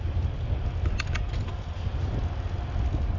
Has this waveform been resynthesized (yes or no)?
no